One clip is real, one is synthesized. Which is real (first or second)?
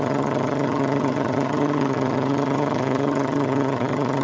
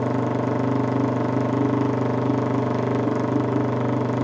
second